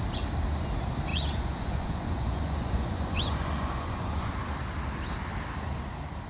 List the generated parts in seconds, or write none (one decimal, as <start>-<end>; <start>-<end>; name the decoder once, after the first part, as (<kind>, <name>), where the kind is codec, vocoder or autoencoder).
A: 1.1-4.3 (vocoder, Vocos)